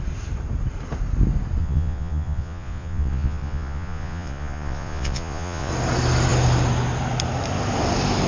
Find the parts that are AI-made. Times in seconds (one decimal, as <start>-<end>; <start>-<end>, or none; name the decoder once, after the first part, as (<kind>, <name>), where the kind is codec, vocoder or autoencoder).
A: 1.6-5.7 (vocoder, Vocos)